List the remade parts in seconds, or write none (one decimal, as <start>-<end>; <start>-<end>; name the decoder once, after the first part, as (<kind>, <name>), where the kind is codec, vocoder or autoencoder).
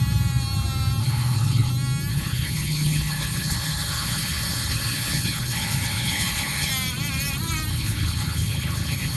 1.0-1.7 (codec, HILCodec); 2.1-6.7; 7.7-9.2